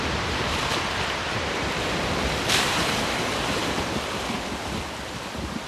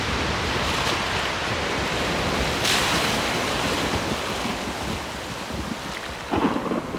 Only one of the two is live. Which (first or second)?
second